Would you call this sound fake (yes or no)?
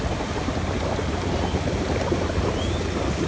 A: no